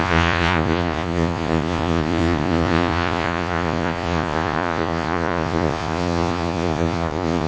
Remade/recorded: remade